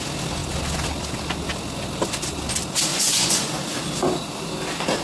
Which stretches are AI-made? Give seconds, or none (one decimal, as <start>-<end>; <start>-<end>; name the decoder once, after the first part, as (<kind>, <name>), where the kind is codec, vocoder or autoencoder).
2.9-3.6 (vocoder, Vocos)